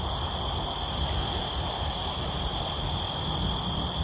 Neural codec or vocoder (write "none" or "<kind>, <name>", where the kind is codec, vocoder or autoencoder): none